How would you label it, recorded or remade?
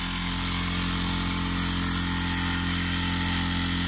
recorded